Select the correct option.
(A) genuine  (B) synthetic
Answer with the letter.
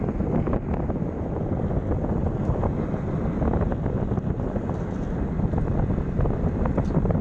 A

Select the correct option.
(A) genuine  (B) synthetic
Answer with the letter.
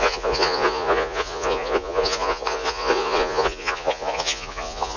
B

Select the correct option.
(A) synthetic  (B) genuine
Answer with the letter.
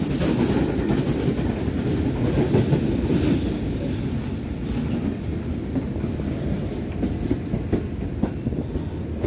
B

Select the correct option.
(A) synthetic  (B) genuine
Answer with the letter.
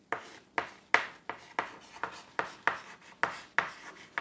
B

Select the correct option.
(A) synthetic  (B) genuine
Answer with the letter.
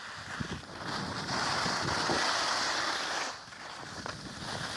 B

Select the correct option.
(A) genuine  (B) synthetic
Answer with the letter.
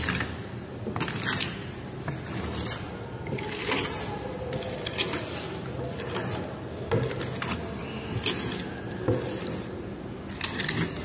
A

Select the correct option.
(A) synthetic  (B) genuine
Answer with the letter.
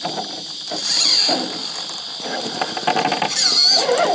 B